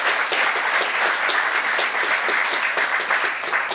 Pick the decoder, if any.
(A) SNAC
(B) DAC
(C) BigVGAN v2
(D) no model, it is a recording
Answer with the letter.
D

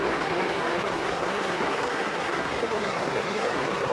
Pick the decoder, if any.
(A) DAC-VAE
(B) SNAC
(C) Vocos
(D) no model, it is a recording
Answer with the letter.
B